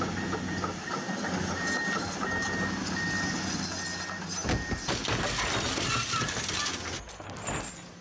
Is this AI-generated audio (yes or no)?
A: no